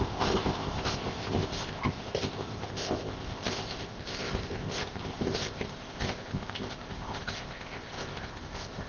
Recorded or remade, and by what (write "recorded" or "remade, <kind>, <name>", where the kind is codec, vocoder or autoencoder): remade, codec, ZipCodec